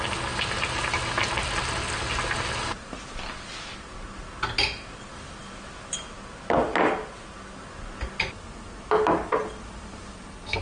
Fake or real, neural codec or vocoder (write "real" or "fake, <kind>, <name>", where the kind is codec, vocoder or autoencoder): real